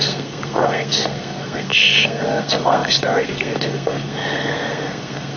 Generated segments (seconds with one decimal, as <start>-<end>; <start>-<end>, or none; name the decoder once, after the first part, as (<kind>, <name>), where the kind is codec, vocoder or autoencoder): 0.0-5.4 (codec, SNAC)